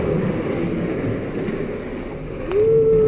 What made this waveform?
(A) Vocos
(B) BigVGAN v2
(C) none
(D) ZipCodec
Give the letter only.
C